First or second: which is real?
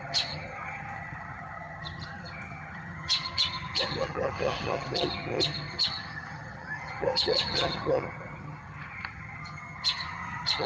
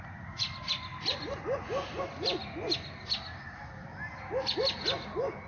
second